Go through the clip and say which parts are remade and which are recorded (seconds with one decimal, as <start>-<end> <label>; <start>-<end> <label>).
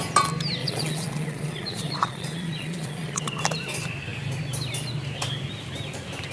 0.0-0.6 recorded; 0.6-3.3 remade; 3.3-6.3 recorded